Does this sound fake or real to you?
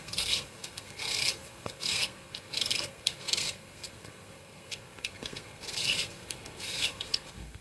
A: fake